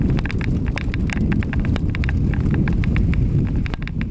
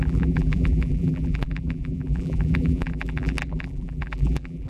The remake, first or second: second